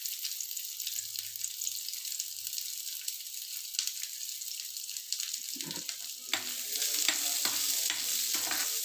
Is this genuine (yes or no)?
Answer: yes